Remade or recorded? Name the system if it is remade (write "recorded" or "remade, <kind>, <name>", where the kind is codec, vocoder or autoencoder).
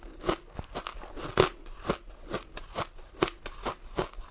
recorded